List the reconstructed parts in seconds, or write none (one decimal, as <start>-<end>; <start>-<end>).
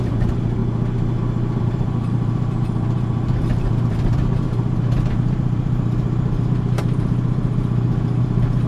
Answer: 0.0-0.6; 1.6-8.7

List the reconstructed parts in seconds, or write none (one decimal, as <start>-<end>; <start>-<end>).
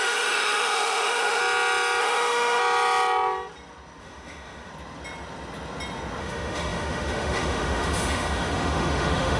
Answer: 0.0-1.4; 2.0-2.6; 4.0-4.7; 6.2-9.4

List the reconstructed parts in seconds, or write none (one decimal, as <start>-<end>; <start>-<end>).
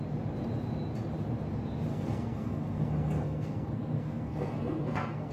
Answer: 1.9-5.3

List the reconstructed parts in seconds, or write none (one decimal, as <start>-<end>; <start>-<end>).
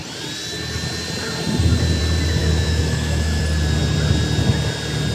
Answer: 2.4-3.4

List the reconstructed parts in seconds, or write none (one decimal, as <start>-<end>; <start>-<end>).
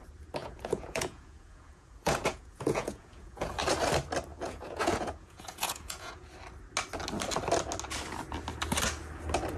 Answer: 0.4-3.6; 4.3-6.3